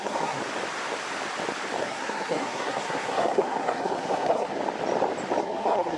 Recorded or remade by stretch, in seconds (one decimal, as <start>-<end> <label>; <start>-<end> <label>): 0.0-0.4 remade; 0.4-1.8 recorded; 1.8-4.6 remade; 4.6-5.4 recorded; 5.4-6.0 remade